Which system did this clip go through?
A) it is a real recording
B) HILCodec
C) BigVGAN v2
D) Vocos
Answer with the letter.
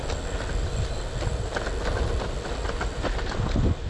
A